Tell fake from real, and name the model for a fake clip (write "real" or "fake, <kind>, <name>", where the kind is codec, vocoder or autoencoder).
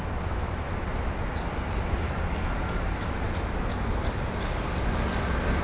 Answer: real